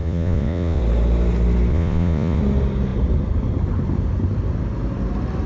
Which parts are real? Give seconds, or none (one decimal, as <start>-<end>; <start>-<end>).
0.8-1.7; 2.4-5.5